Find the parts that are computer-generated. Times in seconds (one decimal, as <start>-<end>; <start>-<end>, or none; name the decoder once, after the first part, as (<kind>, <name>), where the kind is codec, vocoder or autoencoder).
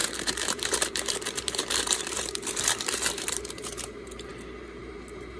0.0-4.3 (vocoder, BigVGAN v2); 4.8-5.4